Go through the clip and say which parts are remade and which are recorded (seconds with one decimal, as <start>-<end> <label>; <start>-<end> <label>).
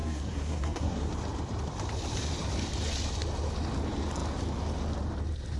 0.0-1.1 remade; 1.1-5.6 recorded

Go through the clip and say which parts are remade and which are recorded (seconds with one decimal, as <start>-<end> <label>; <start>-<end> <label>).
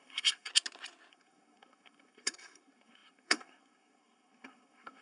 0.0-0.5 remade; 0.5-1.1 recorded; 1.1-5.0 remade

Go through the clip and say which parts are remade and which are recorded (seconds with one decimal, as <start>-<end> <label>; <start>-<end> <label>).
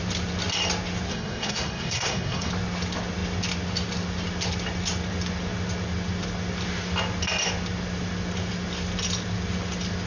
0.0-1.1 recorded; 1.1-2.5 remade; 2.5-10.1 recorded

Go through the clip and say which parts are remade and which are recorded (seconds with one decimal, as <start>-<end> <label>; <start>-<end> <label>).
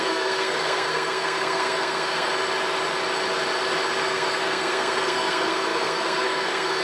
0.0-2.3 remade; 2.3-4.0 recorded; 4.0-6.8 remade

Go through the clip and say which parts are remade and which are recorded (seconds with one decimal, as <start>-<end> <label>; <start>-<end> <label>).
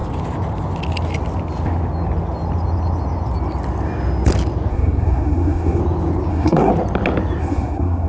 0.0-4.7 recorded; 4.7-5.8 remade; 5.8-6.3 recorded; 6.3-6.7 remade; 6.7-7.4 recorded; 7.4-8.1 remade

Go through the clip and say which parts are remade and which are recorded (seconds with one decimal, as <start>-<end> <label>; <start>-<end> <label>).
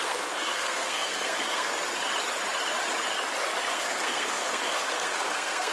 0.0-1.7 remade; 1.7-3.7 recorded; 3.7-5.7 remade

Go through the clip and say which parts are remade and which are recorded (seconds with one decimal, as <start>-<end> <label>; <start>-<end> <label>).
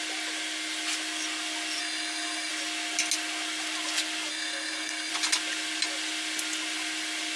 0.0-1.8 recorded; 1.8-2.5 remade; 2.5-4.3 recorded; 4.3-5.1 remade; 5.1-7.4 recorded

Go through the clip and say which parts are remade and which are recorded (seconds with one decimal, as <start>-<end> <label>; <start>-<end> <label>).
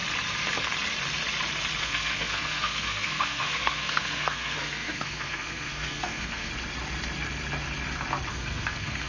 0.0-1.8 recorded; 1.8-6.5 remade; 6.5-8.3 recorded; 8.3-9.1 remade